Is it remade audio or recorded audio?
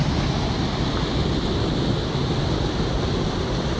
recorded